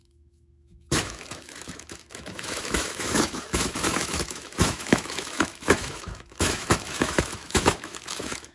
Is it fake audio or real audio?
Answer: fake